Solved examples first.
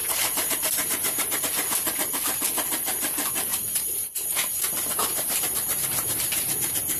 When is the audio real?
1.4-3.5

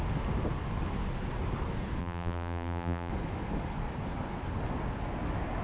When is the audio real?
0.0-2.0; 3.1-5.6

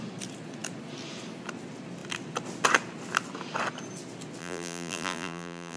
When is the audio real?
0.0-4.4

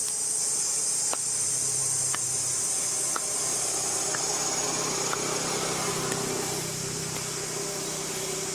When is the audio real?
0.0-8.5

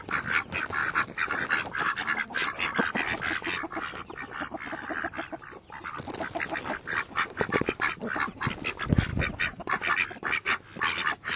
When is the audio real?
0.8-1.3; 2.4-6.4; 9.1-9.9

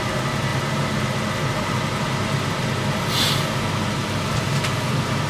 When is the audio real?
0.0-4.0; 4.6-5.3

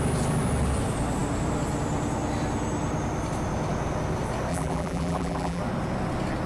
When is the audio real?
0.0-4.5; 5.6-6.5

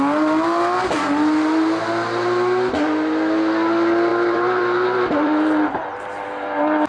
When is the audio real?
0.0-4.1